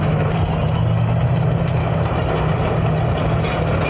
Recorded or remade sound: recorded